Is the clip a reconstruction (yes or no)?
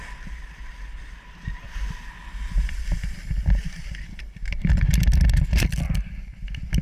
no